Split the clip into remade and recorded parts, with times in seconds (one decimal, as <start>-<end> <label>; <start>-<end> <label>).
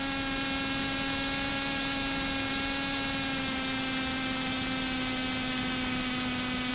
0.0-6.7 recorded